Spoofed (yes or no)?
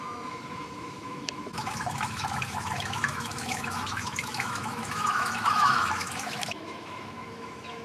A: yes